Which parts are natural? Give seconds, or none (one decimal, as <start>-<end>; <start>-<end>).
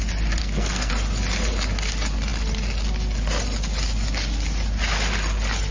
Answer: 0.0-0.4; 0.9-5.7